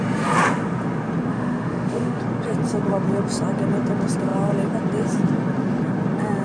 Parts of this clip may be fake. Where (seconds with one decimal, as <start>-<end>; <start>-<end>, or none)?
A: 1.3-2.2

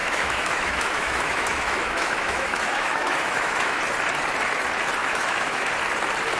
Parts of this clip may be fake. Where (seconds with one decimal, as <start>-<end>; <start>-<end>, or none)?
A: 0.0-3.8; 5.0-5.7

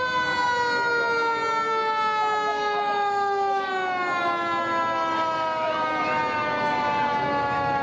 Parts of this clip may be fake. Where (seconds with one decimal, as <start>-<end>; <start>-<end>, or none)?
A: 2.5-3.7

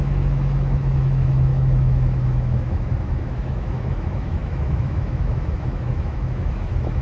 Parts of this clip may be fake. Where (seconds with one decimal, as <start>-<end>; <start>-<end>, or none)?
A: 0.0-7.0

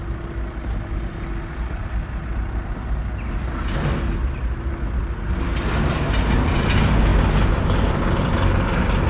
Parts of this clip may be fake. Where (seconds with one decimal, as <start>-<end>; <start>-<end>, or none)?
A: none

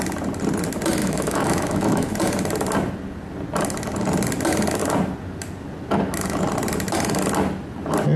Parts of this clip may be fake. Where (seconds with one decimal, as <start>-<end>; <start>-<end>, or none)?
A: 1.0-2.1

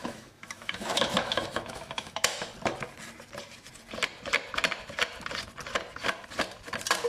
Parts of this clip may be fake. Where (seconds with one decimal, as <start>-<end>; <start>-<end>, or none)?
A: 0.0-2.5

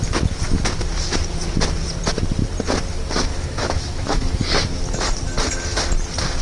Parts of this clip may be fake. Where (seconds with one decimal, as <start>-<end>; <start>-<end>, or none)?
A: 3.3-4.4